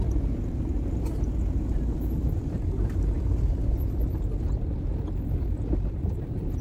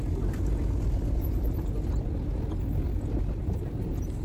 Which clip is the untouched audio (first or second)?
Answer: second